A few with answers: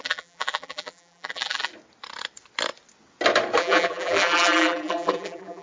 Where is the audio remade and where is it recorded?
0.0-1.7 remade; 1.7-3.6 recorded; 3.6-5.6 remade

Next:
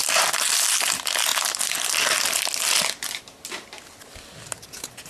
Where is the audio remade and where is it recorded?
0.0-5.1 recorded